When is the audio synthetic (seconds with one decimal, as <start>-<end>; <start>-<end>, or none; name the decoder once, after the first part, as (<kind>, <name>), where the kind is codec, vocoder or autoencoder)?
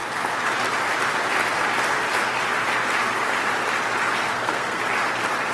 4.2-4.8 (codec, SNAC)